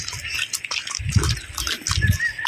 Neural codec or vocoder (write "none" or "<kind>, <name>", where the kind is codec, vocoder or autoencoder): none